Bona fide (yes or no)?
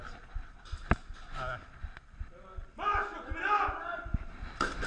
yes